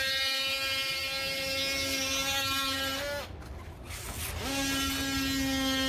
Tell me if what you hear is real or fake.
real